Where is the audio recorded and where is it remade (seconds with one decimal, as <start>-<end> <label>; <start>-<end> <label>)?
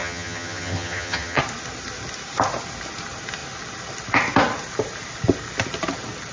0.0-1.4 remade; 1.4-6.3 recorded